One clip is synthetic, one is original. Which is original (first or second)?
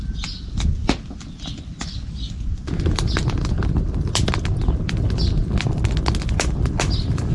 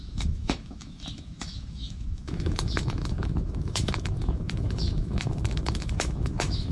first